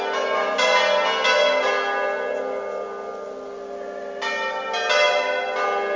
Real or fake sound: real